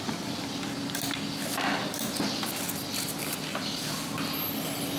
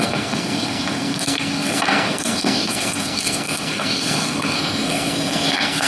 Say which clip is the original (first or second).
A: first